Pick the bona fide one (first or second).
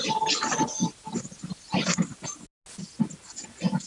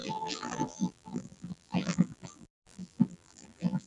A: first